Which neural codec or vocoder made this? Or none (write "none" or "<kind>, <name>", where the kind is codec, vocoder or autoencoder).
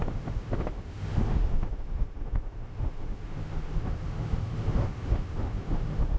autoencoder, DAC-VAE